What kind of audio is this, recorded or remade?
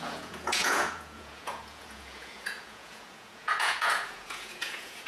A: remade